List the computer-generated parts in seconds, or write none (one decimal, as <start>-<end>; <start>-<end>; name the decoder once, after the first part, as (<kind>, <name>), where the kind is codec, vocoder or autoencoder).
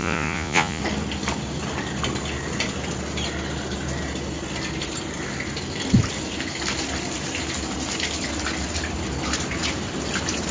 0.0-0.8 (vocoder, Vocos)